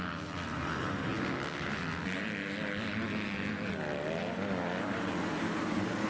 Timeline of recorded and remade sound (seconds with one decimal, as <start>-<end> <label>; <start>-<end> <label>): 0.0-1.1 remade; 1.1-4.8 recorded; 4.8-6.1 remade